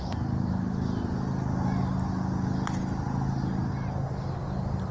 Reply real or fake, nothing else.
real